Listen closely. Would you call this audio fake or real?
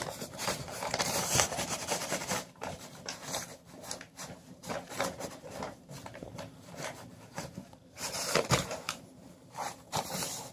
fake